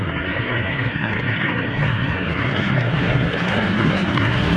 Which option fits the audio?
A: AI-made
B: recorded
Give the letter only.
A